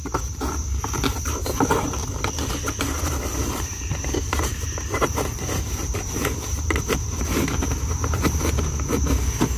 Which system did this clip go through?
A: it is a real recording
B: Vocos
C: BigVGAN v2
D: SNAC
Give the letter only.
C